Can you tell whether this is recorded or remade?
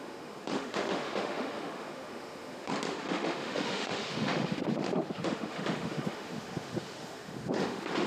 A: remade